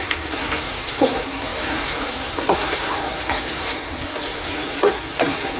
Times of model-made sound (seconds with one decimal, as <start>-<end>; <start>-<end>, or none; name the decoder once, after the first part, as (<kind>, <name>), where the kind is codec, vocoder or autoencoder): 0.0-5.6 (codec, SNAC)